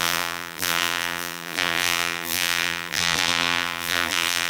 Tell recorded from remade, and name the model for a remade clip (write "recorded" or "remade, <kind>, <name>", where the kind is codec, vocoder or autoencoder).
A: remade, vocoder, BigVGAN v2